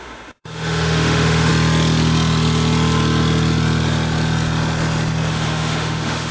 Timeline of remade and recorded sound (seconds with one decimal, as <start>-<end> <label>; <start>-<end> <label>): 0.0-1.5 remade; 1.5-5.3 recorded; 5.3-6.3 remade